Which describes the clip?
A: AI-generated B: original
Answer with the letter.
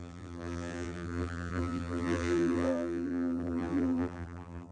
A